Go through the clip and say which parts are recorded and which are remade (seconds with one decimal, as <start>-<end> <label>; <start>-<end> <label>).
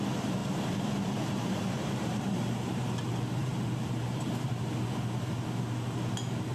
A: 0.0-0.4 recorded; 0.4-2.4 remade; 2.4-3.4 recorded; 3.4-4.5 remade; 4.5-6.5 recorded